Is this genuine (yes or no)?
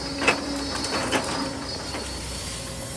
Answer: no